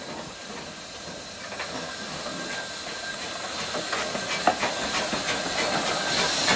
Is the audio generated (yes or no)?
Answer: no